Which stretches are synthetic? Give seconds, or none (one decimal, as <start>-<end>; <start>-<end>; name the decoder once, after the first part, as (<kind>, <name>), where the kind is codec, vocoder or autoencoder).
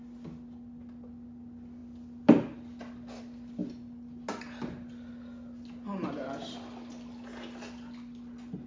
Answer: none